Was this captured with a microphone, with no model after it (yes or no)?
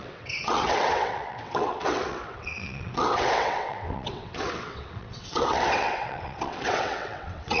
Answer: no